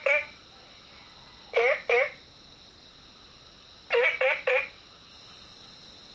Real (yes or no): yes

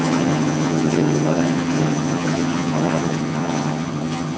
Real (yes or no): no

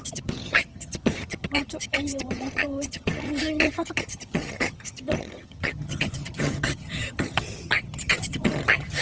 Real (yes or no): no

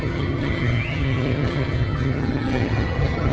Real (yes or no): no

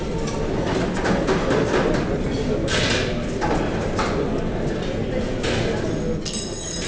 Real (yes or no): yes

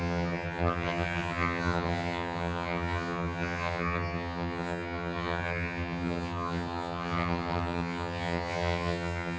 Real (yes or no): no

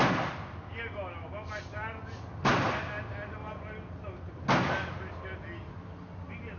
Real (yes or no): yes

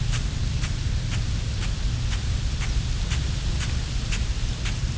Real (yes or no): yes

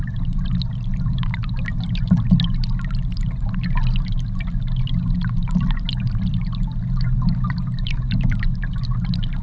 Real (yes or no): yes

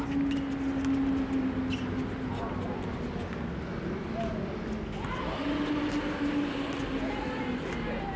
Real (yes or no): yes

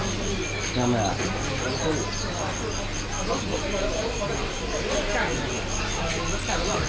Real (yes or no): yes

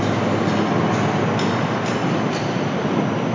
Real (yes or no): yes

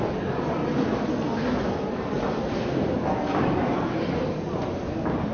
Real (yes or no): yes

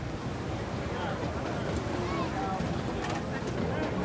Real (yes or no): yes